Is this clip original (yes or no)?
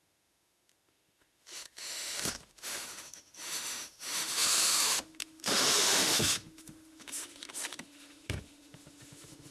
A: no